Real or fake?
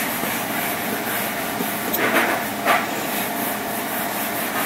real